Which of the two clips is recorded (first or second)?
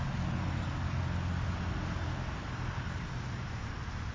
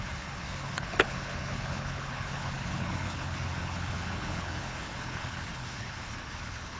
first